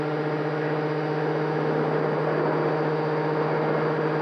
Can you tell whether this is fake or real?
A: real